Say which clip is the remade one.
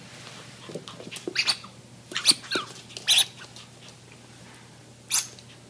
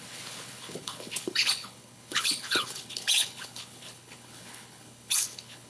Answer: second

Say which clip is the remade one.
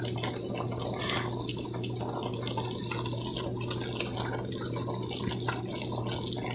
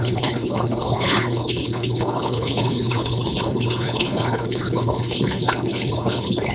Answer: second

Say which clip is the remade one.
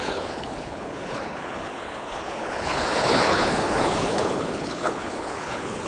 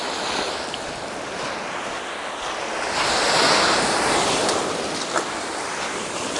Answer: first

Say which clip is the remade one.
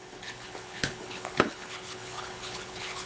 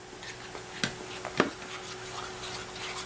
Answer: first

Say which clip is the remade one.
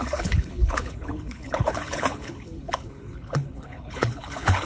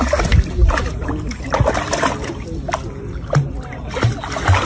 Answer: first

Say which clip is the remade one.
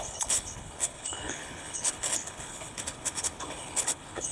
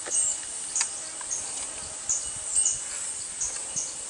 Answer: first